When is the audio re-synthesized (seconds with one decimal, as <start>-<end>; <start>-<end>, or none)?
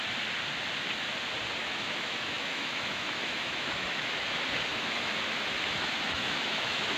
1.6-4.1; 4.7-7.0